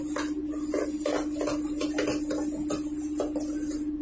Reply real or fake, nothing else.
real